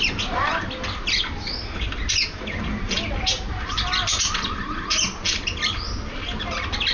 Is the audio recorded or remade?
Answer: recorded